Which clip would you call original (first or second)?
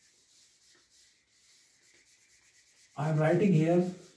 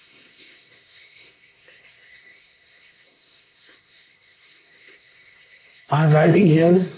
first